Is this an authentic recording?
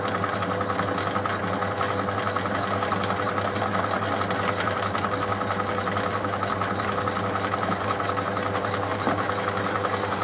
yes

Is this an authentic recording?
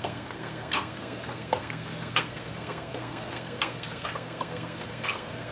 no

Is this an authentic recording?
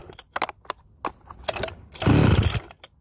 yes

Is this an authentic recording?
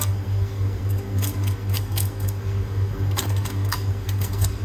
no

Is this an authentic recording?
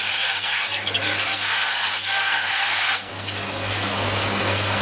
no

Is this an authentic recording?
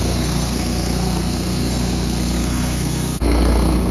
no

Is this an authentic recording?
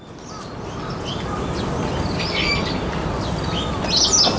yes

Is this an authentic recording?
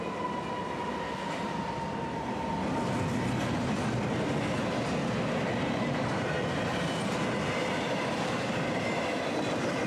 yes